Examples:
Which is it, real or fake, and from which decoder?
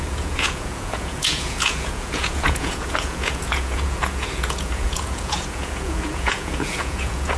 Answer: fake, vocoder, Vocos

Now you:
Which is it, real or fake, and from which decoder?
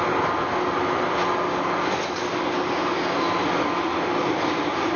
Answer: real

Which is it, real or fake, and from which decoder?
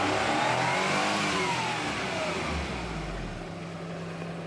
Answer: real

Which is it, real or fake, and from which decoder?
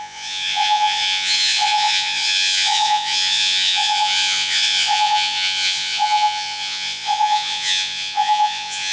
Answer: fake, vocoder, Vocos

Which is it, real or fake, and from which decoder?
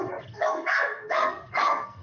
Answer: fake, codec, SNAC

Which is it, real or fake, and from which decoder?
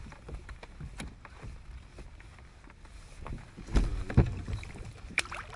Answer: real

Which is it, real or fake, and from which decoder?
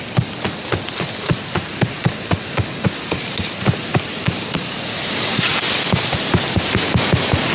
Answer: real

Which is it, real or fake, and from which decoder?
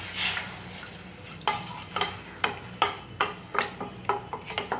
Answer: real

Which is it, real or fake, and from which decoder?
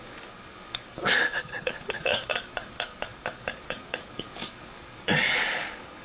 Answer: fake, codec, DAC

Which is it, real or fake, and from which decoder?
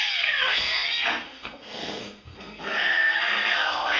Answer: fake, codec, SNAC